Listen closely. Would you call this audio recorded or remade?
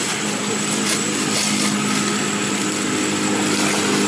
recorded